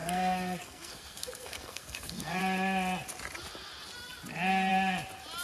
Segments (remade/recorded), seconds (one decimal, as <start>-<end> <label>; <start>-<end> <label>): 0.0-2.4 remade; 2.4-5.4 recorded